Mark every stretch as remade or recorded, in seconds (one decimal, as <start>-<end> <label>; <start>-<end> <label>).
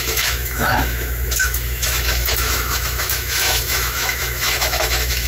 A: 0.0-5.3 remade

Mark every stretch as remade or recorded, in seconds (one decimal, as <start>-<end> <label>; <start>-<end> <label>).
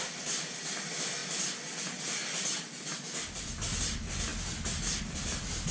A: 0.0-1.2 remade; 1.2-3.4 recorded; 3.4-4.3 remade; 4.3-5.0 recorded; 5.0-5.7 remade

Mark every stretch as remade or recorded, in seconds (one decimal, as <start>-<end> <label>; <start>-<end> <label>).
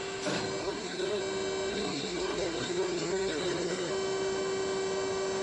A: 0.0-0.6 recorded; 0.6-1.2 remade; 1.2-1.7 recorded; 1.7-3.9 remade; 3.9-5.4 recorded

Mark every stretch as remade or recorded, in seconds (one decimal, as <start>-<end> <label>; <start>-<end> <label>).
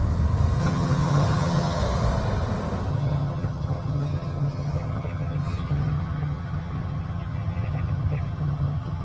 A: 0.0-0.6 recorded; 0.6-1.8 remade; 1.8-2.9 recorded; 2.9-9.0 remade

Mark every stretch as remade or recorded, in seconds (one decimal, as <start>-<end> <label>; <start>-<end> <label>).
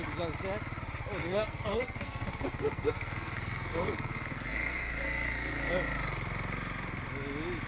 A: 0.0-1.2 recorded; 1.2-5.7 remade; 5.7-7.7 recorded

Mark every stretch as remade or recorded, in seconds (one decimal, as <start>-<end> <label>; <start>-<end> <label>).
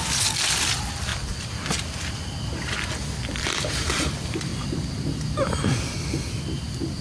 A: 0.0-7.0 recorded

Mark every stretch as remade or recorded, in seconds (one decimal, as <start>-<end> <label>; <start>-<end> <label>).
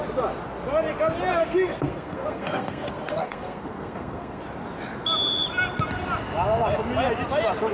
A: 0.0-1.4 recorded; 1.4-4.4 remade; 4.4-7.7 recorded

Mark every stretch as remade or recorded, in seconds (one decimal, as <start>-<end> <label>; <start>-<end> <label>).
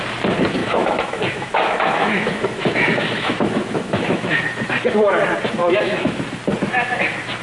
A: 0.0-0.6 recorded; 0.6-4.4 remade; 4.4-5.6 recorded; 5.6-6.2 remade; 6.2-7.4 recorded